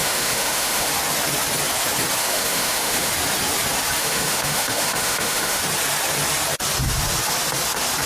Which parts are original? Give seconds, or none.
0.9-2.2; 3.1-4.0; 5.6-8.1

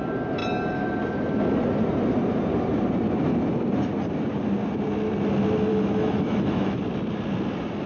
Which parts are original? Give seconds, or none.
0.0-5.7; 6.8-7.9

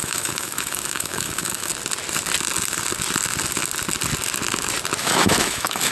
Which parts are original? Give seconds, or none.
1.7-5.0

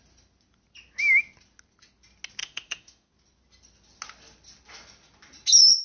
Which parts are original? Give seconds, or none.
0.0-2.4; 3.1-5.8

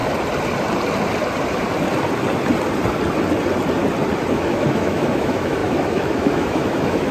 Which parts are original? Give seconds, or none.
0.0-4.3

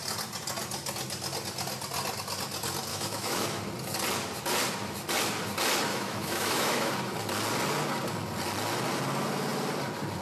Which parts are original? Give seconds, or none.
0.0-2.9; 3.6-5.9; 6.9-10.2